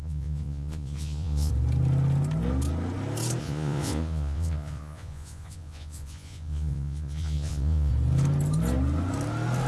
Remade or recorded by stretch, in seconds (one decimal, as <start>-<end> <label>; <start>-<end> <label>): 0.0-1.5 remade; 1.5-3.4 recorded; 3.4-7.9 remade; 7.9-9.7 recorded